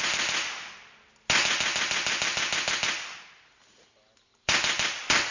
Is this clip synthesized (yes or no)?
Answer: no